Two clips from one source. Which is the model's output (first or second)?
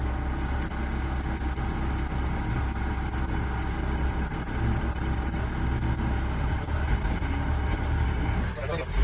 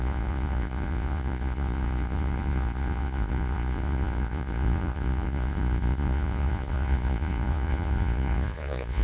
second